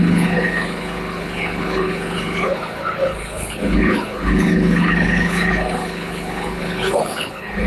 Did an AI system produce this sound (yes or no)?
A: yes